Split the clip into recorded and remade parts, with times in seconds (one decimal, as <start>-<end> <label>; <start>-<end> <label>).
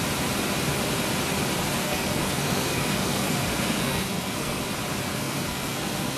0.0-1.8 recorded; 1.8-4.6 remade; 4.6-5.1 recorded; 5.1-6.2 remade